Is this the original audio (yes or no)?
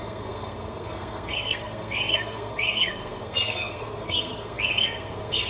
no